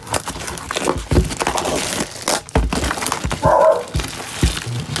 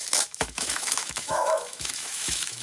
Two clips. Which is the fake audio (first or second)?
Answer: second